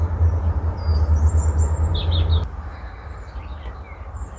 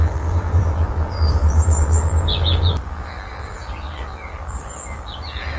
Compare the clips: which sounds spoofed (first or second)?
second